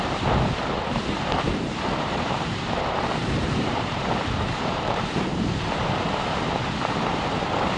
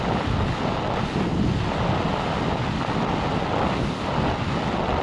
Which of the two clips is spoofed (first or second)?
first